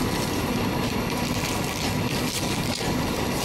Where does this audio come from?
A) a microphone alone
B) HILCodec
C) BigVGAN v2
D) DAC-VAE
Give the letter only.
A